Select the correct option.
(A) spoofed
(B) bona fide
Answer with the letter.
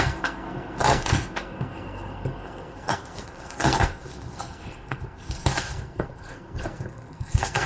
A